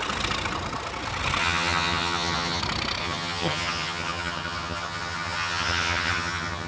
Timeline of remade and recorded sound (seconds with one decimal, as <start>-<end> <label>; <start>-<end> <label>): 0.0-1.4 recorded; 1.4-2.6 remade; 2.6-3.0 recorded; 3.0-6.7 remade